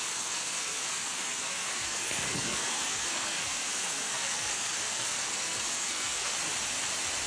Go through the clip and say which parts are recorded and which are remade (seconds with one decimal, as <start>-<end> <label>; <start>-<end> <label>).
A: 0.0-6.3 remade; 6.3-7.3 recorded